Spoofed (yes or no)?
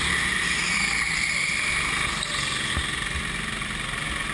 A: no